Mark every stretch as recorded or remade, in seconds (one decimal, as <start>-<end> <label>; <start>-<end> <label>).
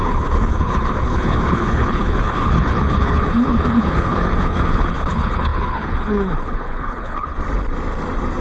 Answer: 0.0-7.3 remade; 7.3-8.4 recorded